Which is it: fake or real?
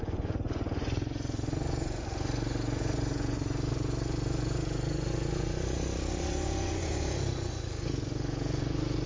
fake